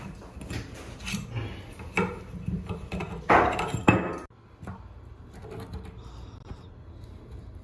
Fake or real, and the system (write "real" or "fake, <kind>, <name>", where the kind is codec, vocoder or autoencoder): real